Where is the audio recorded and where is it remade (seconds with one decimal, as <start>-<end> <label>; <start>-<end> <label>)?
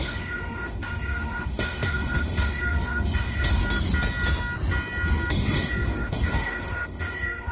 0.0-3.6 remade; 3.6-5.3 recorded; 5.3-7.5 remade